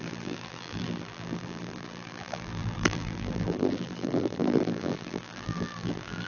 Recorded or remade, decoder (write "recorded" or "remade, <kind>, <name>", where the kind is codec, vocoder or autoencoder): remade, vocoder, BigVGAN v2